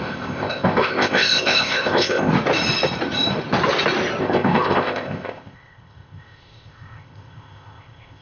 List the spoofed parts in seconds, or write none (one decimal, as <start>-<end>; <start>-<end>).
0.0-2.3; 4.2-8.2